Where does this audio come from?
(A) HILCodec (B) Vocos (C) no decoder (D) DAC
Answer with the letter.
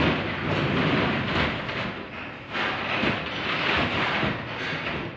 C